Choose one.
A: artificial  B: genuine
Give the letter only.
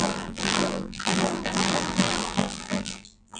A